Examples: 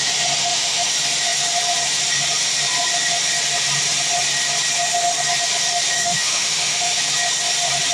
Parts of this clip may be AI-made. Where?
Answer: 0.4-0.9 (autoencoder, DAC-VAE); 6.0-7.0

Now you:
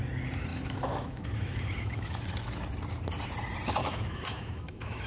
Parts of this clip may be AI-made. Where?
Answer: 0.5-2.1 (autoencoder, DAC-VAE); 3.8-5.1

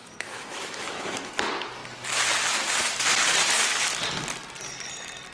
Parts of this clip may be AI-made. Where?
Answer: 0.0-1.3 (autoencoder, DAC-VAE)

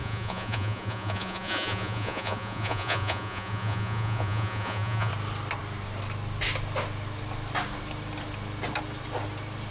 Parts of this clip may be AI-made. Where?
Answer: 0.0-5.1 (vocoder, Vocos)

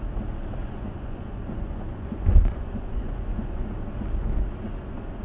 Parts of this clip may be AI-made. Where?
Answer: 0.6-3.7 (vocoder, Vocos)

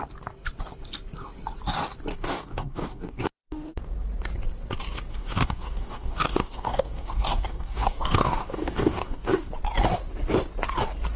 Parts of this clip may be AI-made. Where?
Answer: 2.1-3.8 (codec, DAC); 5.1-9.5

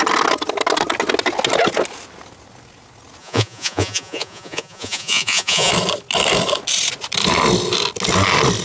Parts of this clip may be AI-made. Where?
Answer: 3.2-5.7 (vocoder, Vocos)

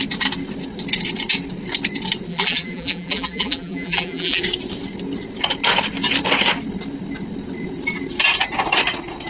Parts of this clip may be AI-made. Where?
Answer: 2.3-4.4 (vocoder, BigVGAN v2)